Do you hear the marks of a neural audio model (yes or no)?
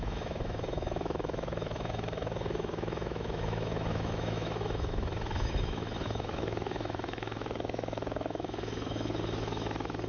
yes